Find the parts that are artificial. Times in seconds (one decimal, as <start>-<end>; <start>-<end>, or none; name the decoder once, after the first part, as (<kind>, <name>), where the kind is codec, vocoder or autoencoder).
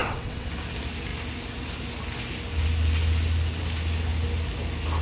0.0-0.5 (vocoder, WaveNeXt)